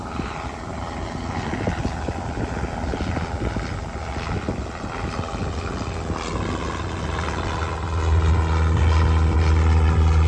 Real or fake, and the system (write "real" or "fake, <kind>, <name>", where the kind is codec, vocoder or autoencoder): real